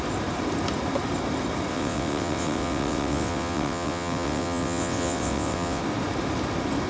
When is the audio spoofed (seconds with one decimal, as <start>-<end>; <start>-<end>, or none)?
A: 1.7-5.8